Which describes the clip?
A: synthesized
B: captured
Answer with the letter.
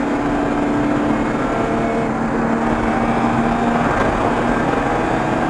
B